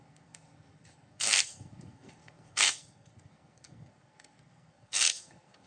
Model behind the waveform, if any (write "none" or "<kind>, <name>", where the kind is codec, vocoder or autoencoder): codec, SNAC